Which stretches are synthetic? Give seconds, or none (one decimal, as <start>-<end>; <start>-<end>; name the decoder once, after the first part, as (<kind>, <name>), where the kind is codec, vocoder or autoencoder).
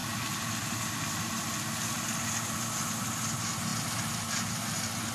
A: none